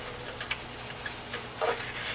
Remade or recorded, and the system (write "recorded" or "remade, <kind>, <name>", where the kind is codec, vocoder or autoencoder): recorded